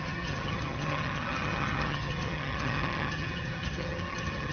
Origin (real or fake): fake